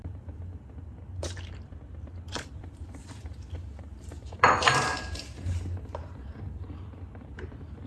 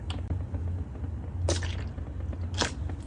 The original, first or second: second